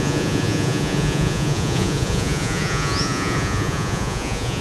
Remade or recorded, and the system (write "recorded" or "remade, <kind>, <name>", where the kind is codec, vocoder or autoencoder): remade, vocoder, Vocos